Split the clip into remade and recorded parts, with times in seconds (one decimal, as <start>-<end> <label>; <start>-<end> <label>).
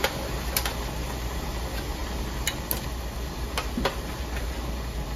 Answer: 0.0-5.2 recorded